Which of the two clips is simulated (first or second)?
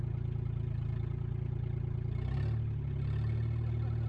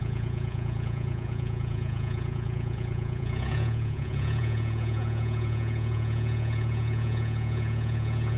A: second